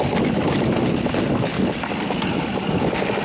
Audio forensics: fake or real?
real